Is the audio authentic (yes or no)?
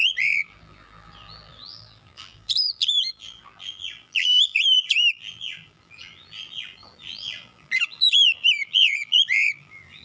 no